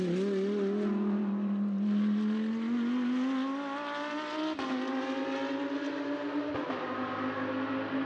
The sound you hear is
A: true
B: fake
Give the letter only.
A